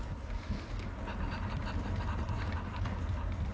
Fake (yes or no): no